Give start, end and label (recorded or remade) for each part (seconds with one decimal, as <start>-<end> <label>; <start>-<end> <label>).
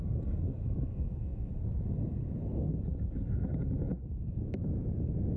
0.0-0.9 recorded; 0.9-1.5 remade; 1.5-5.4 recorded